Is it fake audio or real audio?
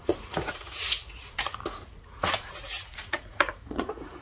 fake